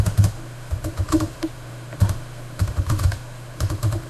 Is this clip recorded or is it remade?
remade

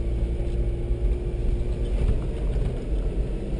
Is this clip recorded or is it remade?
recorded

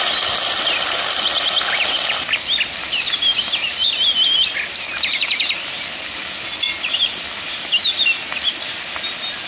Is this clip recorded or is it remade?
recorded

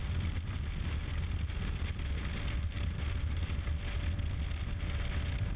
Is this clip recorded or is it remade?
recorded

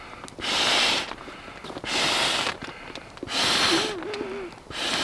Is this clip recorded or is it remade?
recorded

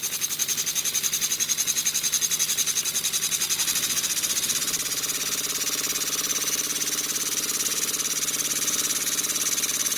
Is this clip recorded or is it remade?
recorded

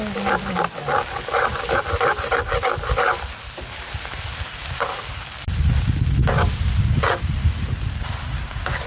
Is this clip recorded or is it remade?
recorded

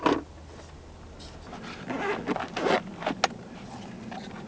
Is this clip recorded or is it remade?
recorded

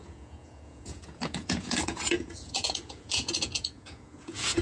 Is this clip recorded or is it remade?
remade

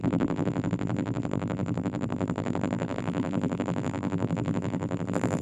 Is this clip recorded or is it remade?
remade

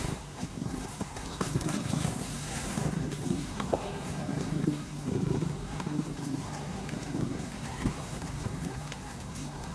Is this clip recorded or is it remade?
remade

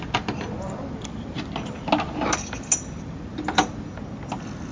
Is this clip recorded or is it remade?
recorded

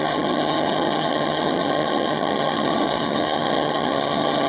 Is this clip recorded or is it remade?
remade